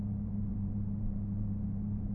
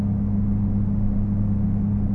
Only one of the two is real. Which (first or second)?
second